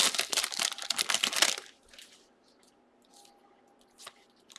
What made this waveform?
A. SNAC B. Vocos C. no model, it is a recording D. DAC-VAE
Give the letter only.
C